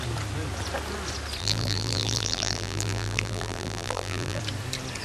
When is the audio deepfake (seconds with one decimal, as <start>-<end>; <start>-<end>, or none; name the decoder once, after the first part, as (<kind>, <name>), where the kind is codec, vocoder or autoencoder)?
1.4-4.4 (vocoder, BigVGAN v2)